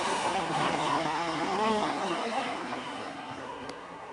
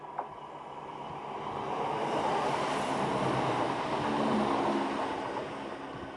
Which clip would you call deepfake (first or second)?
first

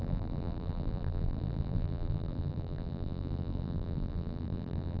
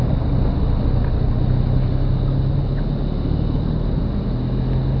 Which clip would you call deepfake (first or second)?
first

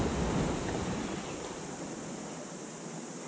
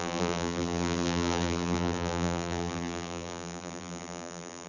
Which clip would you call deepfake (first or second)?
second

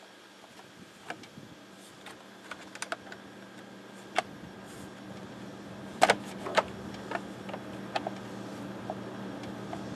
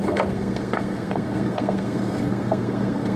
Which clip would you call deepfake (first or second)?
second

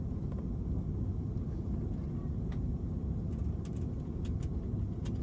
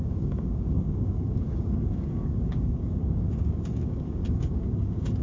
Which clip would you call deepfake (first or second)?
second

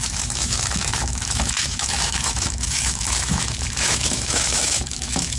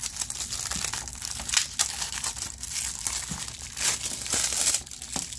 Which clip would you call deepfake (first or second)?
first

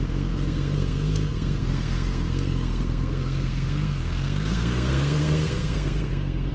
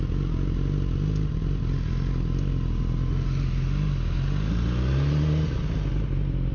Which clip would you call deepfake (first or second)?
first